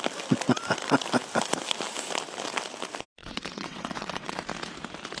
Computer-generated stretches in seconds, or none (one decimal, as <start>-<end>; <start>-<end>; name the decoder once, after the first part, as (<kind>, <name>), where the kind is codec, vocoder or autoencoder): 3.2-4.4 (vocoder, WaveNeXt)